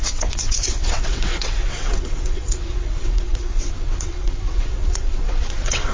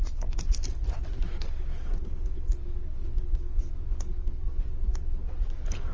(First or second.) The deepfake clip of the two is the first